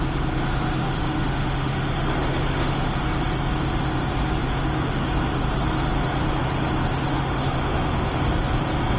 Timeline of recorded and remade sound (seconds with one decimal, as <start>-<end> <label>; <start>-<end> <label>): 0.0-0.8 recorded; 0.8-3.0 remade; 3.0-7.1 recorded; 7.1-8.2 remade; 8.2-9.0 recorded